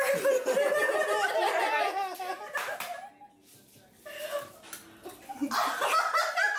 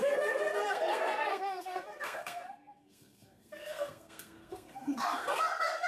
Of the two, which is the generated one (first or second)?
second